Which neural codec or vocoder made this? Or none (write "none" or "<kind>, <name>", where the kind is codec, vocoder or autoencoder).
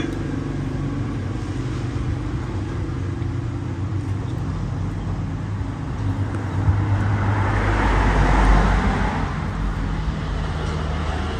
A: none